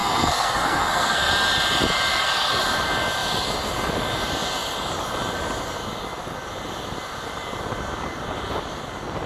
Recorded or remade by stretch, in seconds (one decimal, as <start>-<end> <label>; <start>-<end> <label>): 0.0-1.3 remade; 1.3-2.1 recorded; 2.1-2.6 remade; 2.6-9.3 recorded

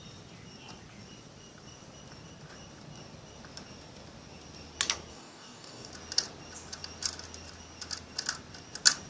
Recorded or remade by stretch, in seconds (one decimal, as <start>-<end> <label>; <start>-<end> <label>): 0.0-5.1 recorded; 5.1-5.9 remade; 5.9-9.1 recorded

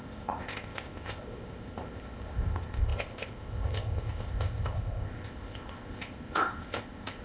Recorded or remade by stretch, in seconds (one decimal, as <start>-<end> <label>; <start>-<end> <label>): 0.0-7.2 remade